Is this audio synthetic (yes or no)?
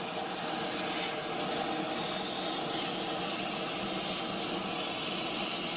no